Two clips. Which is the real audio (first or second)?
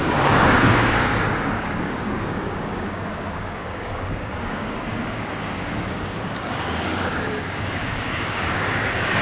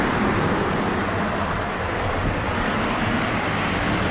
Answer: second